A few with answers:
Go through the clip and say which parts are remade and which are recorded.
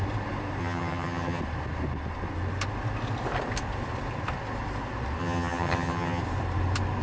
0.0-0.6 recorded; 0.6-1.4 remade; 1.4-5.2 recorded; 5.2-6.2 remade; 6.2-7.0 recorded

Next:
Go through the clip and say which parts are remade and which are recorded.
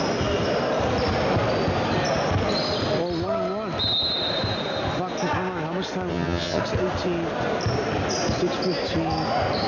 0.0-6.1 recorded; 6.1-6.6 remade; 6.6-9.7 recorded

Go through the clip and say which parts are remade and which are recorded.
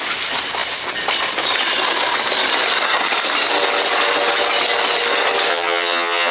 0.0-5.5 recorded; 5.5-6.3 remade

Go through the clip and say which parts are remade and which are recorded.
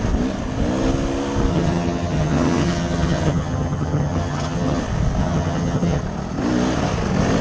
0.0-1.5 recorded; 1.5-4.8 remade; 4.8-5.2 recorded; 5.2-6.0 remade; 6.0-7.4 recorded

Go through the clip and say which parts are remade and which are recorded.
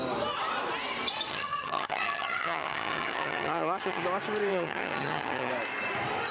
0.0-1.3 recorded; 1.3-4.0 remade; 4.0-4.5 recorded; 4.5-5.5 remade; 5.5-6.3 recorded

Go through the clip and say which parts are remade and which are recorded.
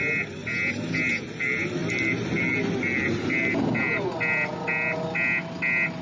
0.0-6.0 recorded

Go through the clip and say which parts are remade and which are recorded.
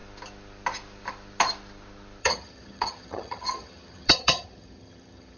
0.0-2.2 recorded; 2.2-5.4 remade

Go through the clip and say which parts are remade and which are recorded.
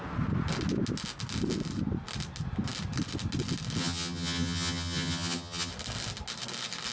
0.0-3.8 recorded; 3.8-5.7 remade; 5.7-6.9 recorded